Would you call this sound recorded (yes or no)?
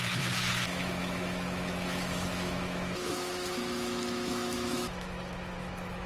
no